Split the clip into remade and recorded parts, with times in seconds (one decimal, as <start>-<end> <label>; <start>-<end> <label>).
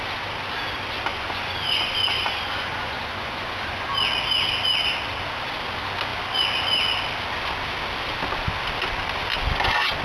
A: 0.0-1.1 recorded; 1.1-3.9 remade; 3.9-10.0 recorded